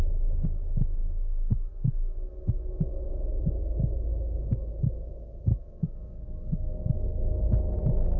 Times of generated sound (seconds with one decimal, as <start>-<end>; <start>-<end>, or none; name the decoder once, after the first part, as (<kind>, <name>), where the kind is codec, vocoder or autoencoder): 4.1-4.7 (codec, DAC); 5.5-7.5